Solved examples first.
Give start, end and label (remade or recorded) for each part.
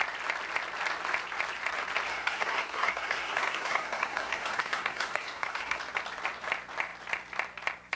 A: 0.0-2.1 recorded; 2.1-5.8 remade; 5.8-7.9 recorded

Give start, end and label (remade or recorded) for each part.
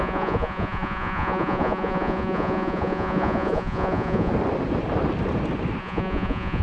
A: 0.0-4.3 remade; 4.3-5.8 recorded; 5.8-6.6 remade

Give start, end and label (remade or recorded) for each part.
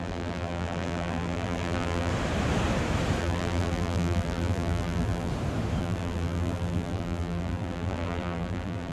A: 0.0-2.1 remade; 2.1-3.2 recorded; 3.2-5.3 remade; 5.3-5.8 recorded; 5.8-8.9 remade